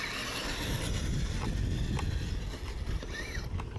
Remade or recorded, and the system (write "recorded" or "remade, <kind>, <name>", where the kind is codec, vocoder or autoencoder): recorded